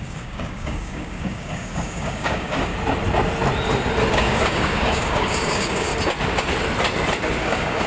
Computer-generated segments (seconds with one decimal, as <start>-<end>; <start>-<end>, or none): 0.0-2.7; 4.1-5.9; 7.4-7.9